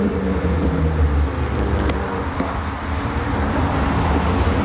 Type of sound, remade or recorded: recorded